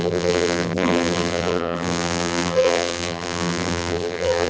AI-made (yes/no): yes